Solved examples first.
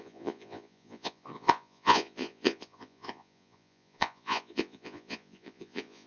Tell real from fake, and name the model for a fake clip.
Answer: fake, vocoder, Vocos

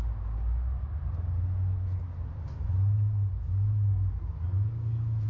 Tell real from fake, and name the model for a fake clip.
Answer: real